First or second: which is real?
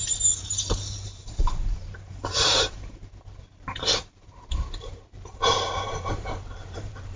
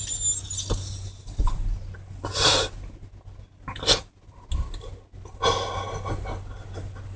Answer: second